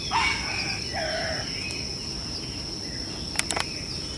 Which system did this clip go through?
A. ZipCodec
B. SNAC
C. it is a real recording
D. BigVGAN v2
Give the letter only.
C